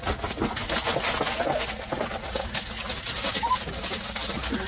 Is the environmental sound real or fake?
real